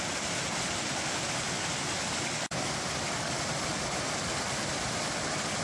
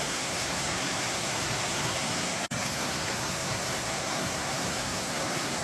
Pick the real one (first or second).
first